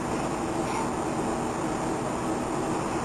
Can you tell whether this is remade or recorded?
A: recorded